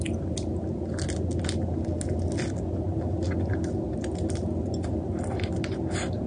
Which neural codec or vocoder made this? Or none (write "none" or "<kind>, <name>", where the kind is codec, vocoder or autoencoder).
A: none